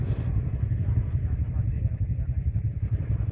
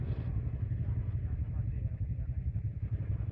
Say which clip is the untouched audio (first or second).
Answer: second